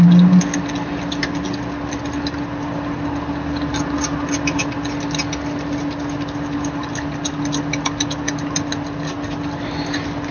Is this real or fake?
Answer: real